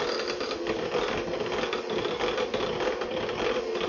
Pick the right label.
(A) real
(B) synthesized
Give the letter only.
A